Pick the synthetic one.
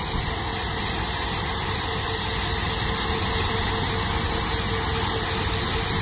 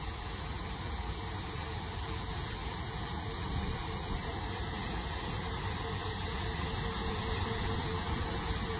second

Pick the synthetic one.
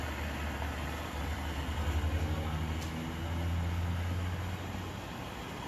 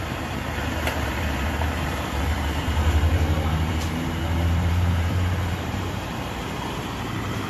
second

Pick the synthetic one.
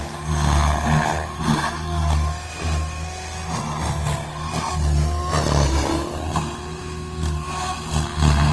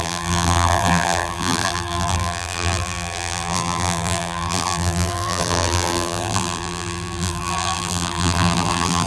second